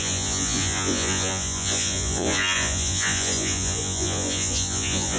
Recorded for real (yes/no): no